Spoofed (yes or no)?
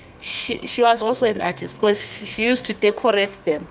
yes